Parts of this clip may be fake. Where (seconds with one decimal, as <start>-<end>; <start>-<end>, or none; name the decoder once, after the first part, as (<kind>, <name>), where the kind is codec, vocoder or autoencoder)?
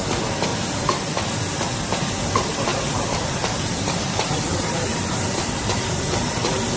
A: 0.5-1.0 (vocoder, BigVGAN v2); 2.7-6.8